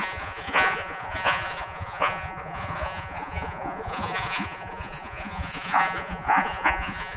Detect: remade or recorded remade